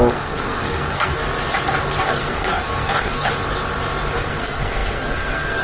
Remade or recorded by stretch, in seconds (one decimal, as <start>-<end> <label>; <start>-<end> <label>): 0.0-1.2 remade; 1.2-2.0 recorded; 2.0-3.3 remade; 3.3-4.1 recorded; 4.1-5.6 remade